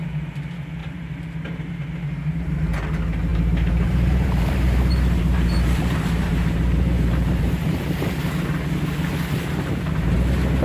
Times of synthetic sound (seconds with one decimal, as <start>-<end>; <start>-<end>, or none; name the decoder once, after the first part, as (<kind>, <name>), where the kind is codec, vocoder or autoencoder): 0.8-1.7 (vocoder, BigVGAN v2); 3.3-8.3